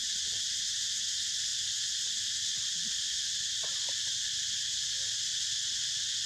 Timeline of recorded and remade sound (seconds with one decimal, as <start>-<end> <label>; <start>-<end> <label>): 0.0-6.3 recorded